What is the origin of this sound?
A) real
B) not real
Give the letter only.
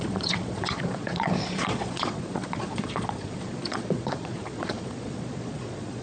B